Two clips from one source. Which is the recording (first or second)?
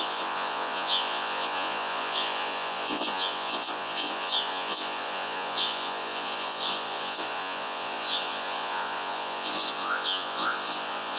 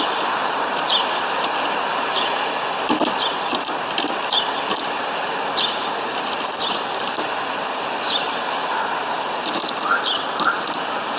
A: second